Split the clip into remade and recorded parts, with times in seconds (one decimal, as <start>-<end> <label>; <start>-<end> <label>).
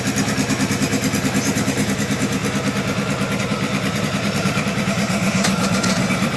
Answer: 0.0-2.4 remade; 2.4-3.4 recorded; 3.4-6.4 remade